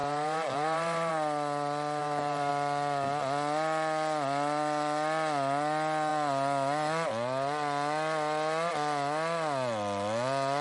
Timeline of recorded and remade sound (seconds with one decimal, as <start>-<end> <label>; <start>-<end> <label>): 0.0-1.1 remade; 1.1-2.0 recorded; 2.0-2.5 remade; 2.5-10.6 recorded